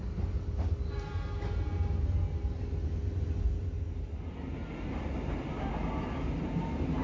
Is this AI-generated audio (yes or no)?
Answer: no